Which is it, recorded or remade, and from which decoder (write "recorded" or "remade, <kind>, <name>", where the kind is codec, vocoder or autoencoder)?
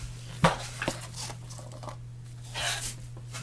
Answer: recorded